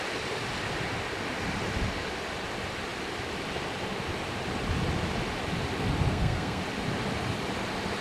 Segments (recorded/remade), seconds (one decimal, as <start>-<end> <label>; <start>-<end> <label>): 0.0-6.1 recorded; 6.1-6.6 remade; 6.6-8.0 recorded

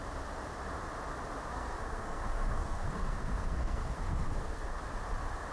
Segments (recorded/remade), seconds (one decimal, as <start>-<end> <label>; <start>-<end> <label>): 0.0-1.5 recorded; 1.5-4.8 remade; 4.8-5.5 recorded